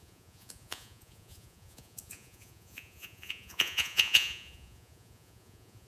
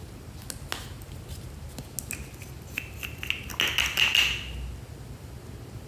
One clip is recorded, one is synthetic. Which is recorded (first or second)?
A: second